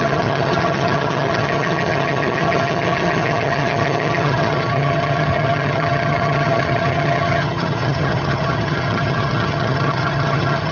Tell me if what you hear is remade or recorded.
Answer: remade